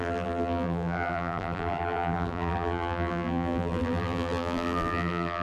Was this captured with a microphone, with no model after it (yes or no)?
no